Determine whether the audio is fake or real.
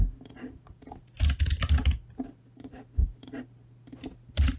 real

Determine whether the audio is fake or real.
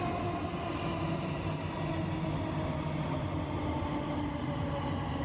real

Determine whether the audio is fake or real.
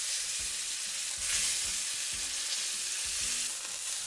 real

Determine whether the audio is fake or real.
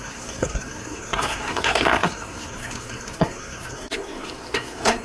fake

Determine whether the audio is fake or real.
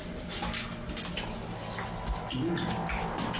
real